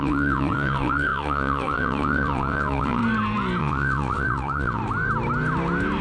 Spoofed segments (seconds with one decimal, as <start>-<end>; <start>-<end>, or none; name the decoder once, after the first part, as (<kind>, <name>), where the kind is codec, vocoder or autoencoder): 0.0-3.0 (vocoder, WaveNeXt); 3.6-4.8